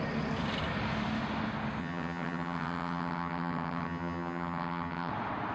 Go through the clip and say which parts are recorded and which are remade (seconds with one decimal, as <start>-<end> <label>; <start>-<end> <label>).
0.0-1.8 recorded; 1.8-5.1 remade; 5.1-5.5 recorded